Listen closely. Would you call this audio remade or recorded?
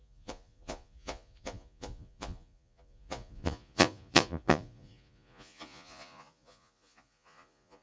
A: remade